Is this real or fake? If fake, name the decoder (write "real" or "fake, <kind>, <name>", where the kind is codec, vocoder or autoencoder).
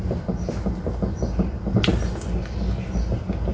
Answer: real